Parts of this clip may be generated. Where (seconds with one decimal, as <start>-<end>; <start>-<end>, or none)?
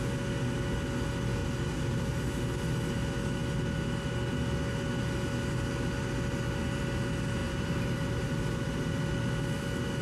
1.4-2.4; 7.4-9.0